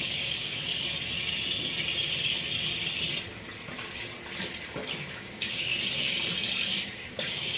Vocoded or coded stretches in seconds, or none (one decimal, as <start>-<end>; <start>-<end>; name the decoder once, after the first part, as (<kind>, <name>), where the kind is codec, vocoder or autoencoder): 0.0-0.7 (codec, DAC); 5.0-5.7; 7.1-7.6